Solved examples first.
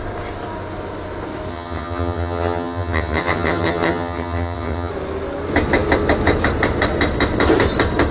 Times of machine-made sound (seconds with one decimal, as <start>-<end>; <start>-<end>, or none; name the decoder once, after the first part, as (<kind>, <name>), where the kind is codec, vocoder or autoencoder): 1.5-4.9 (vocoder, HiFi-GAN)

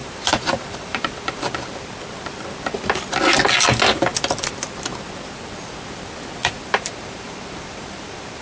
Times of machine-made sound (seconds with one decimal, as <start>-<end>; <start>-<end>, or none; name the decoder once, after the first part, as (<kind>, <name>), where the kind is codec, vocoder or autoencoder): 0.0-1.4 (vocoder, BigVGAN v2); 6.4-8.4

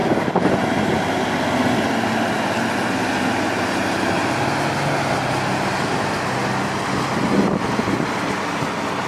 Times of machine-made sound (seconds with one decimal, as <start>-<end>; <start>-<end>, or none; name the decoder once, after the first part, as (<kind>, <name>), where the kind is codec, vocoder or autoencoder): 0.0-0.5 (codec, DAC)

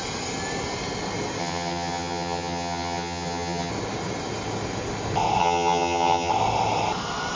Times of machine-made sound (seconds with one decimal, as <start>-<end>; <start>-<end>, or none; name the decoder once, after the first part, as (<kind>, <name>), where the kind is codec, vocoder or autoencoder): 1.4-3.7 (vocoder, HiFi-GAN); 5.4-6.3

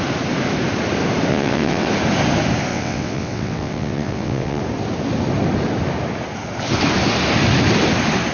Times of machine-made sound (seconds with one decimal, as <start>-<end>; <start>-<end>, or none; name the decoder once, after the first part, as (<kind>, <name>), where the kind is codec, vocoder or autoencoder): 1.3-1.9 (vocoder, WaveNeXt); 2.7-4.6